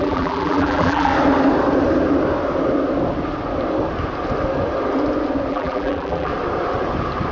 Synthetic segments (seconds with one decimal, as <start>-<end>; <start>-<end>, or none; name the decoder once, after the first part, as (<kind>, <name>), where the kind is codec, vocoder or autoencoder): 0.0-1.1 (vocoder, BigVGAN v2); 5.5-6.3

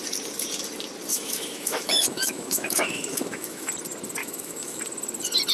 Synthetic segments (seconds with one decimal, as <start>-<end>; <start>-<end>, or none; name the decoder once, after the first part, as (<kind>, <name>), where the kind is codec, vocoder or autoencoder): 1.1-3.7 (autoencoder, DAC-VAE); 4.2-4.8

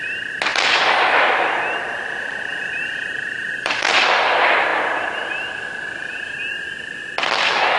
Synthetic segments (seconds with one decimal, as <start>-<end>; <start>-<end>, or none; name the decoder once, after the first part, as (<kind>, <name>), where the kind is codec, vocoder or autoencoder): 0.5-1.6 (vocoder, BigVGAN v2); 2.5-4.0

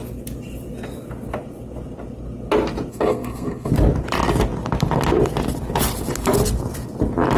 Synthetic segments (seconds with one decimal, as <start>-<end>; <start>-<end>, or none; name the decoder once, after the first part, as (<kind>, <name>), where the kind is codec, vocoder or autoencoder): 2.9-3.7 (codec, SNAC)

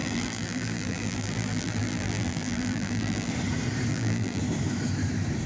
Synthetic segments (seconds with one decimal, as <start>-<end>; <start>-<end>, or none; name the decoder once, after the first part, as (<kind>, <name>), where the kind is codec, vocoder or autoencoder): 0.0-3.3 (vocoder, BigVGAN v2); 3.9-4.4

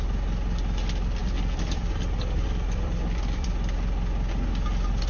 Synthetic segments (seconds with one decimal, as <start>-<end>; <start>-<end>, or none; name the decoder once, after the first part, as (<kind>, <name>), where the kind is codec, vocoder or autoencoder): 1.2-3.5 (vocoder, BigVGAN v2)